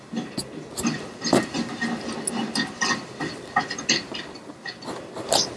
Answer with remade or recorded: recorded